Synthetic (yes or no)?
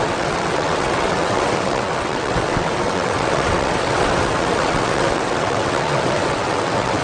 yes